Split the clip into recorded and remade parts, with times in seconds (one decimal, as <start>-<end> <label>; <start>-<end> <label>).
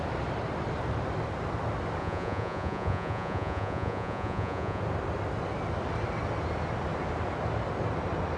0.0-2.0 recorded; 2.0-4.8 remade; 4.8-8.4 recorded